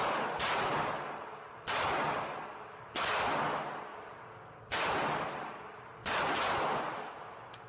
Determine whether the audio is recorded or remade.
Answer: recorded